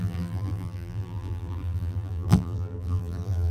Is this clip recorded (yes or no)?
no